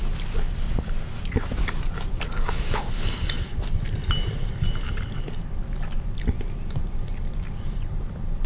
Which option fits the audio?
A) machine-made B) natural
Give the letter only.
B